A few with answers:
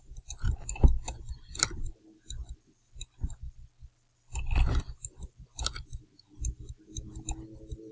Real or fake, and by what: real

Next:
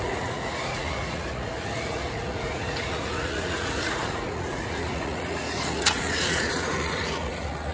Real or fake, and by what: fake, vocoder, Vocos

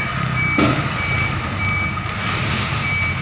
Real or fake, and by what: real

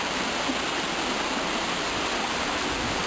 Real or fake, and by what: real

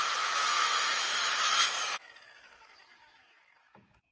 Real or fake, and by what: fake, autoencoder, DAC-VAE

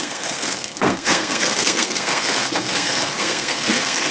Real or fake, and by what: fake, codec, SNAC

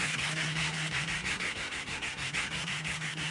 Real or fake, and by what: fake, codec, SNAC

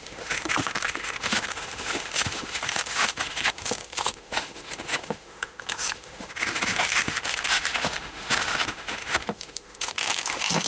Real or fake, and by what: fake, autoencoder, DAC-VAE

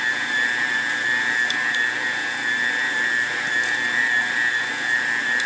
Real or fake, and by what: real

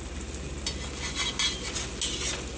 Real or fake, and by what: real